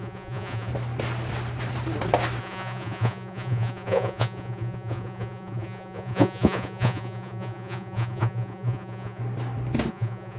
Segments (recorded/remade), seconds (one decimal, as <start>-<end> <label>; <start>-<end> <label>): 0.0-0.7 remade; 0.7-2.4 recorded; 2.4-9.2 remade; 9.2-9.9 recorded; 9.9-10.4 remade